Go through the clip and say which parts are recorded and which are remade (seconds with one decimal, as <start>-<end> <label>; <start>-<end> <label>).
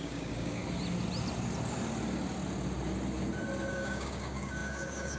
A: 0.0-0.6 remade; 0.6-3.7 recorded; 3.7-5.2 remade